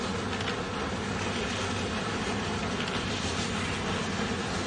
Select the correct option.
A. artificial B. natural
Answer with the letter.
B